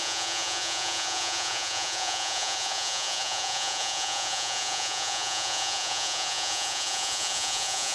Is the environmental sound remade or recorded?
remade